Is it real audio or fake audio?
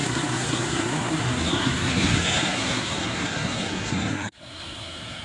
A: fake